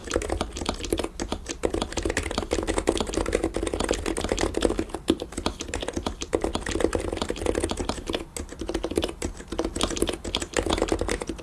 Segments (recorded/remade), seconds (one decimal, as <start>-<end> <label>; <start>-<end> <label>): 0.0-11.4 recorded